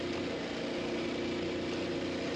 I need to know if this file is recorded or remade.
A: recorded